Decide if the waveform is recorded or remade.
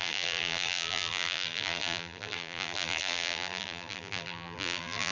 remade